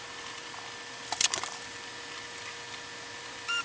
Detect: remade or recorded recorded